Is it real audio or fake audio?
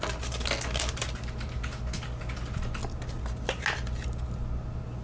real